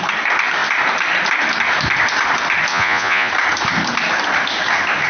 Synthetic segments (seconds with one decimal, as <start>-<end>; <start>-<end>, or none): 2.7-3.3